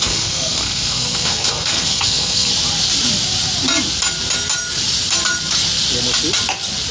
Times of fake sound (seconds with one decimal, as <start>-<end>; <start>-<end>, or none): 0.0-2.5